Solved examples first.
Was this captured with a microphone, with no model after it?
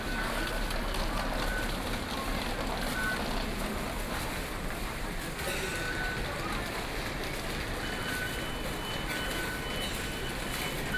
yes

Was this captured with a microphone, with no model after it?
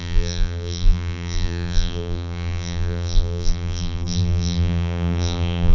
no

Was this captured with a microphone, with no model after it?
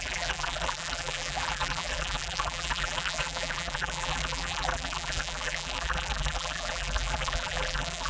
no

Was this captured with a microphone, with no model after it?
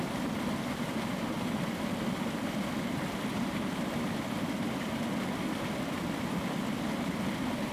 yes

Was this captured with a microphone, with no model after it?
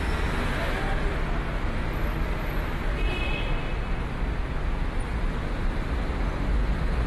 yes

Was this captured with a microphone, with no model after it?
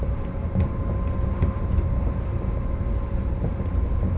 no